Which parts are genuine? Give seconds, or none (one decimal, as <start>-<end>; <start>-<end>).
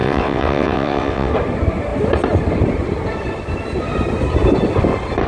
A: 1.3-5.3